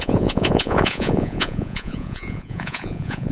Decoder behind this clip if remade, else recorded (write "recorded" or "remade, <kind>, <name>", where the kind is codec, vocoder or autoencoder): remade, vocoder, Vocos